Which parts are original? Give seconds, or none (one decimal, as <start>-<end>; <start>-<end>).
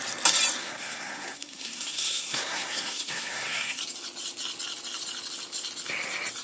0.0-0.6; 3.8-6.4